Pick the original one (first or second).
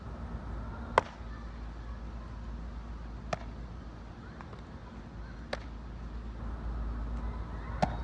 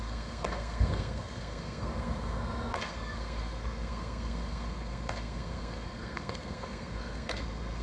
first